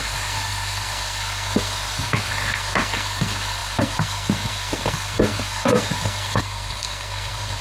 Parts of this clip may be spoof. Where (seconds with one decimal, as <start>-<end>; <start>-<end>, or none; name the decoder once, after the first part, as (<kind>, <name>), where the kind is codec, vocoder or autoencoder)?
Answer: 0.0-7.6 (codec, SNAC)